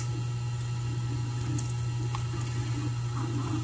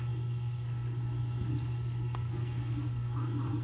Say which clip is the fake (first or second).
second